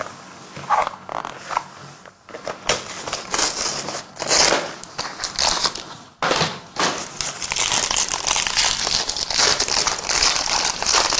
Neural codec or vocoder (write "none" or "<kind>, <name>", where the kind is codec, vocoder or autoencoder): none